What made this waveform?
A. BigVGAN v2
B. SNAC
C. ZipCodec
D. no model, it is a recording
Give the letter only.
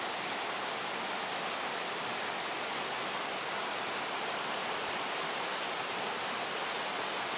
D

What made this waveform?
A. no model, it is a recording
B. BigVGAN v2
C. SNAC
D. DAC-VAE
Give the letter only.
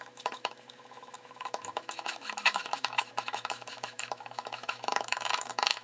D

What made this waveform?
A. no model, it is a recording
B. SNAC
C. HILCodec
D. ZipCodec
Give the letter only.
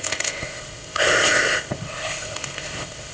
D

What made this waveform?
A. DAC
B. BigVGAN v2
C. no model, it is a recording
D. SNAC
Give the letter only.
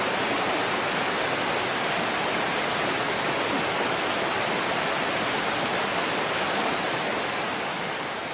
C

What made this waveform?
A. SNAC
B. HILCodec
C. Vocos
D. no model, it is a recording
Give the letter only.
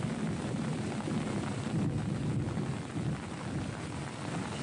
D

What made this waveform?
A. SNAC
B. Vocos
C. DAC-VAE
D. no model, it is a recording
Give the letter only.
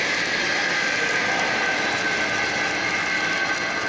D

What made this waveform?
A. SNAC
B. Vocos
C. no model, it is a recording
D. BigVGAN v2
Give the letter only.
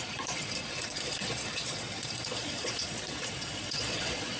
B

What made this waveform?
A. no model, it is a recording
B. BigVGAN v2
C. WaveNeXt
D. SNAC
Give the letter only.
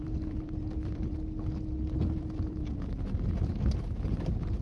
B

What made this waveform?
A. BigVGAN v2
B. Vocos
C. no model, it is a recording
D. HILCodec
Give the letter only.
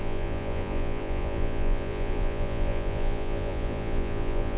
B